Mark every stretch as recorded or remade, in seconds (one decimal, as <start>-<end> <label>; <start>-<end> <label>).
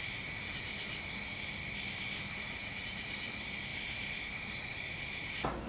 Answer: 0.0-2.6 recorded; 2.6-3.1 remade; 3.1-5.7 recorded